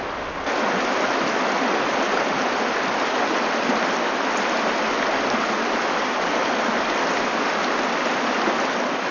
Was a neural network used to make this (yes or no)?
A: no